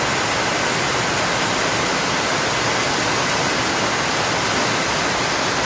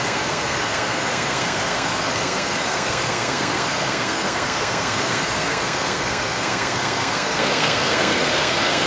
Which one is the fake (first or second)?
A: second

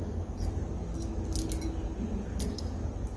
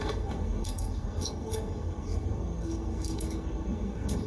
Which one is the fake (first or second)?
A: second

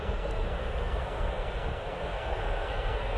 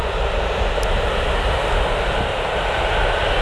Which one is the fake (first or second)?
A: first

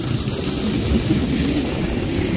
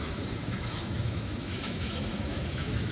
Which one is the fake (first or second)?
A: second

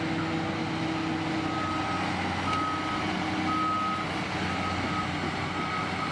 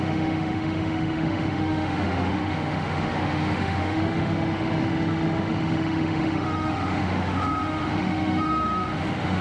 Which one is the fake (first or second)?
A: second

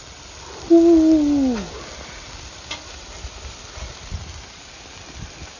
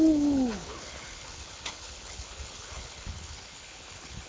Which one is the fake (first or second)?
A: second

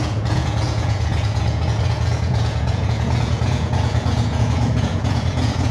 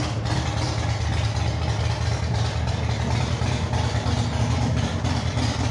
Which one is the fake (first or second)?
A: first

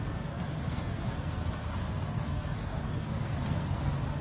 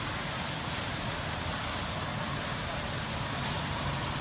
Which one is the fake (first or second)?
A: first